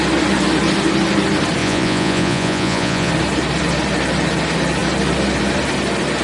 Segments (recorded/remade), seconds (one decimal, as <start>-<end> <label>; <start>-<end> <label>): 0.0-1.6 recorded; 1.6-3.1 remade; 3.1-6.2 recorded